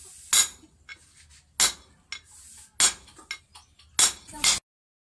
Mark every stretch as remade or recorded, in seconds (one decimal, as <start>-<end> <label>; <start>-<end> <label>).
0.0-5.1 recorded